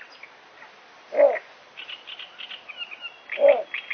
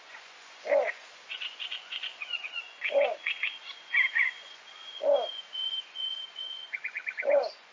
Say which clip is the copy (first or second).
second